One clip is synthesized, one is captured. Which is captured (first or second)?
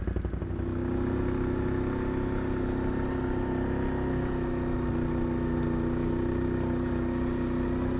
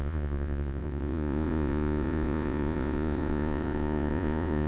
first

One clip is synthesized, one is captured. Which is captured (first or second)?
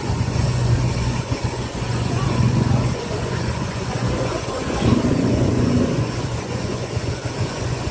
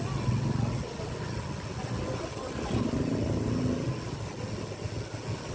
second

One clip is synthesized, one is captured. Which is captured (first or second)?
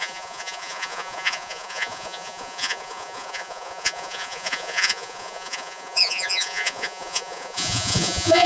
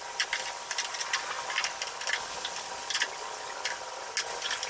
second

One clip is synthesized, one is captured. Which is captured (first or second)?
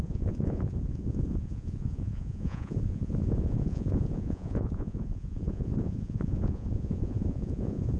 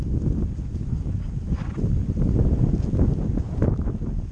second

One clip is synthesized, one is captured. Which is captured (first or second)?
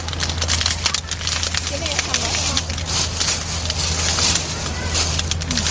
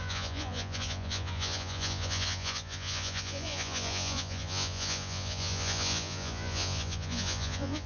first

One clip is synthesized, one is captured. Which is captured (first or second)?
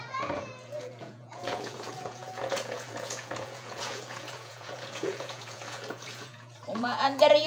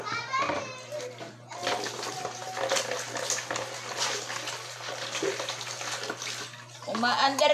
second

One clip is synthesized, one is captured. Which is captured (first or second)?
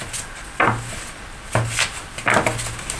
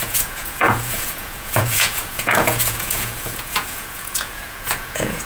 first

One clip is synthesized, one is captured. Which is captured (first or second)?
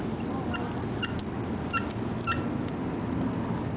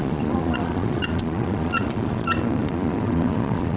first